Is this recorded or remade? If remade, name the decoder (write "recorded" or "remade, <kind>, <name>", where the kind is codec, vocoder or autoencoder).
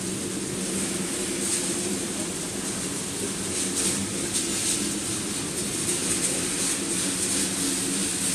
recorded